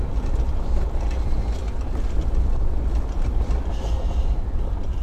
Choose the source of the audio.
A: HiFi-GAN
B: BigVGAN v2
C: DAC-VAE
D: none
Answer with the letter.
D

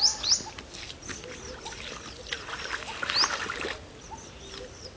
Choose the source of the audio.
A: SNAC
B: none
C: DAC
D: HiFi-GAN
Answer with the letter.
B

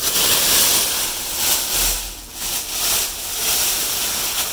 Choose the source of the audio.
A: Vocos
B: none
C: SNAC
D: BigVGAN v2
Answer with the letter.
B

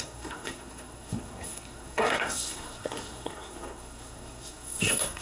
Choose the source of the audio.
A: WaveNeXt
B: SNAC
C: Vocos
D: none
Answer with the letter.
B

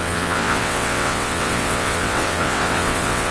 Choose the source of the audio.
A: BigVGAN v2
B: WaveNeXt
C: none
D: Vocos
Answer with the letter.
B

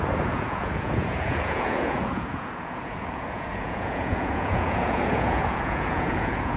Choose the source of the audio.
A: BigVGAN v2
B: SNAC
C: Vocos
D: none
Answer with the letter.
C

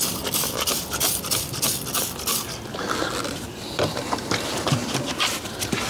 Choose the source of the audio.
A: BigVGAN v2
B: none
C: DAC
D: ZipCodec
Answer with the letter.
A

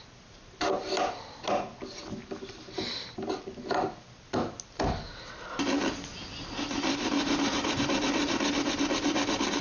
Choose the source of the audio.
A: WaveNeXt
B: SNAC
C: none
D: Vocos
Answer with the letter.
C